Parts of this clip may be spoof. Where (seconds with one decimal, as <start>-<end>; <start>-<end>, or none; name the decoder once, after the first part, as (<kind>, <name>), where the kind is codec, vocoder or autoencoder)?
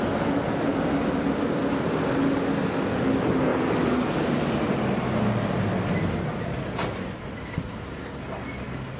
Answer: 0.7-1.6 (vocoder, BigVGAN v2)